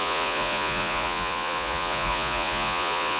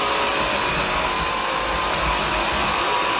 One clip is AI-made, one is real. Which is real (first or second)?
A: second